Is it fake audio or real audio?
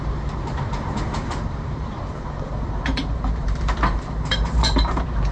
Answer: fake